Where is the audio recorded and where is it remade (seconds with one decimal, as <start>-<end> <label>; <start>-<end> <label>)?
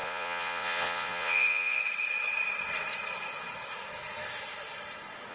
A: 0.0-1.8 remade; 1.8-5.3 recorded